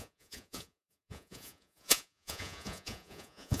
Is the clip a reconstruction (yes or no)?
yes